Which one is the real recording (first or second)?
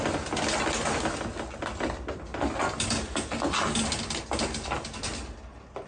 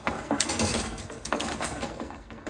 first